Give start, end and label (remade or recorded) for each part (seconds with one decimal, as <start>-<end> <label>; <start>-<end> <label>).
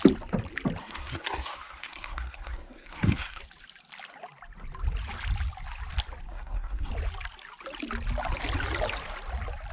0.0-0.8 recorded; 0.8-3.4 remade; 3.4-6.3 recorded; 6.3-6.9 remade; 6.9-9.7 recorded